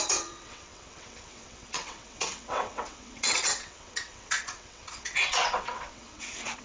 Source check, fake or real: fake